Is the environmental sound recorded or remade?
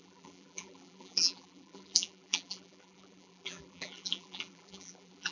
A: remade